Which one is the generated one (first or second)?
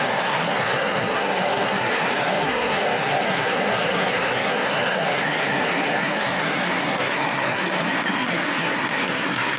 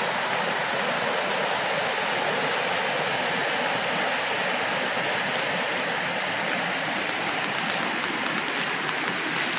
first